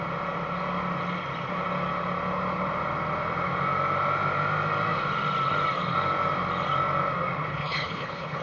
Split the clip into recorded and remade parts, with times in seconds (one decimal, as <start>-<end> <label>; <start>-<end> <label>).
0.0-7.5 recorded; 7.5-8.4 remade